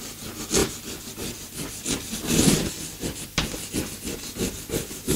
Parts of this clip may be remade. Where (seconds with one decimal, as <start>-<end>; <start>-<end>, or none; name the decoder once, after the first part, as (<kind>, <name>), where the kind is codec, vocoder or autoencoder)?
0.6-3.7 (vocoder, BigVGAN v2)